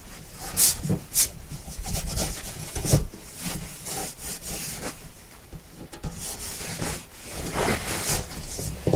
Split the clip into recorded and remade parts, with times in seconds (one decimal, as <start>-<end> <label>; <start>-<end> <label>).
0.0-4.0 remade; 4.0-6.6 recorded; 6.6-7.7 remade; 7.7-8.3 recorded; 8.3-9.0 remade